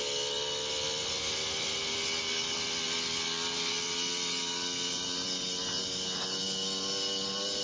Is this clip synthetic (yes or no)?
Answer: no